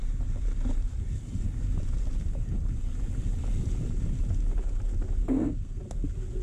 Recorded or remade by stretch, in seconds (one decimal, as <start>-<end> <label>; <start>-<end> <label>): 0.0-5.2 recorded; 5.2-5.8 remade; 5.8-6.4 recorded